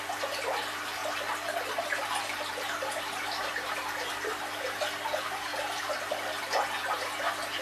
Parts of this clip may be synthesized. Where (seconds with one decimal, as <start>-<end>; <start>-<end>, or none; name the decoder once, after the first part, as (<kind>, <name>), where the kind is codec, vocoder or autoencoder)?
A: 0.0-1.0 (vocoder, BigVGAN v2); 2.5-7.6